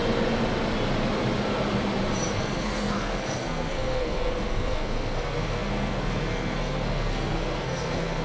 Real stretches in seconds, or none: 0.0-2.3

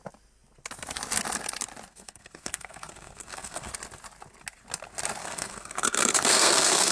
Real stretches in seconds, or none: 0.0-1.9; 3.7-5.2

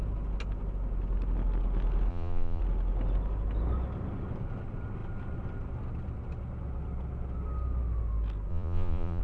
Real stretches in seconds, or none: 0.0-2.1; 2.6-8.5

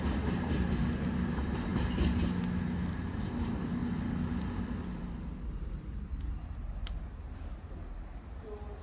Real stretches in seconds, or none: 0.0-8.8